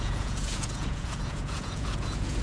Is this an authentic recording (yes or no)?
no